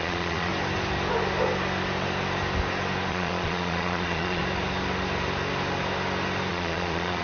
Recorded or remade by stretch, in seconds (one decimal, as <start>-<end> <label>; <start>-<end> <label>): 0.0-0.5 remade; 0.5-3.1 recorded; 3.1-4.4 remade; 4.4-6.5 recorded; 6.5-7.2 remade